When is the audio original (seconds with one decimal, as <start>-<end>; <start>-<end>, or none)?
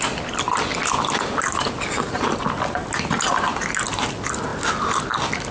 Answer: 0.0-5.5